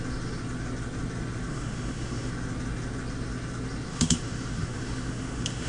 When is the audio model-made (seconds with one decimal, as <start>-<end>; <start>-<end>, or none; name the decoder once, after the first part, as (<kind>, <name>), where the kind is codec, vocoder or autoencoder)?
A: 1.5-2.3 (autoencoder, DAC-VAE); 3.9-5.7